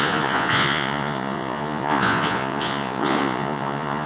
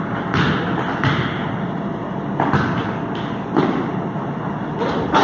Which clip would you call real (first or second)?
second